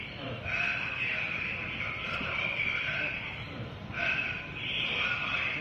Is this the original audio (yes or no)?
no